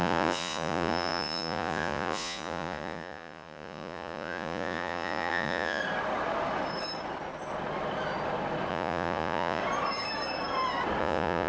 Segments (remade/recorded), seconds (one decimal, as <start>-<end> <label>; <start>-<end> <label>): 0.0-5.8 remade; 5.8-8.7 recorded; 8.7-9.6 remade; 9.6-11.0 recorded; 11.0-11.5 remade